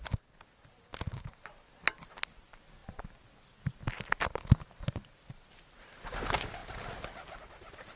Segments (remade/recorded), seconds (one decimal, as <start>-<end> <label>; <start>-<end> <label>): 0.0-8.0 recorded